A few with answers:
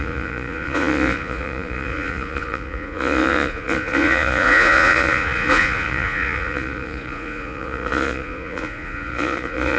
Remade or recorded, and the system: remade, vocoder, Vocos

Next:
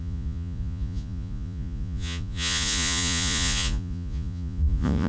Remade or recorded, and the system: remade, vocoder, Vocos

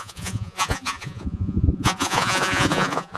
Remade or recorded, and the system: remade, vocoder, Vocos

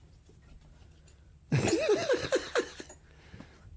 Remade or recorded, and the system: recorded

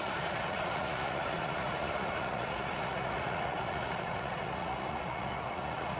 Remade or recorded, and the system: remade, vocoder, Vocos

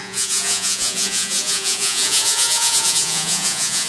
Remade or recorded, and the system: remade, vocoder, Vocos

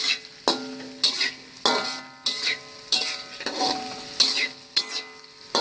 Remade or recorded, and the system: recorded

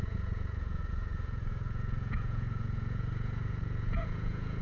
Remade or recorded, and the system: remade, vocoder, Vocos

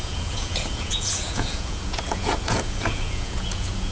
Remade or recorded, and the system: remade, vocoder, Vocos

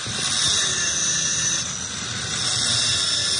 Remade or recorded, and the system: recorded